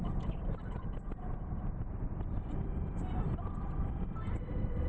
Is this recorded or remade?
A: recorded